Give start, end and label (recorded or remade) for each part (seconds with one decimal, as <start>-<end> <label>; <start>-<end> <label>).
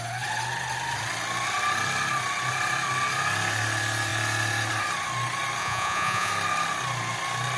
0.0-5.6 recorded; 5.6-6.3 remade; 6.3-7.6 recorded